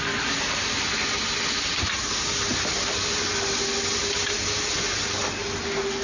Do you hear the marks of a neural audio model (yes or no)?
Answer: no